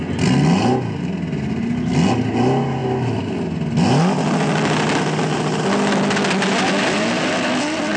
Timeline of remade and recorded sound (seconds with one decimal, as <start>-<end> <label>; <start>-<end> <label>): 0.0-8.0 recorded